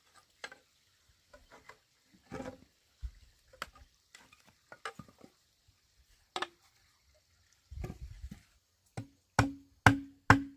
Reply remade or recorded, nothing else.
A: recorded